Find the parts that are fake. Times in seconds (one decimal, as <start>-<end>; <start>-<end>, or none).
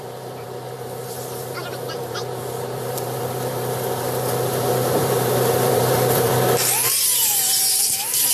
0.0-6.3; 7.0-8.3